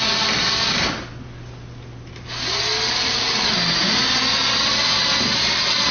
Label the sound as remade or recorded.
recorded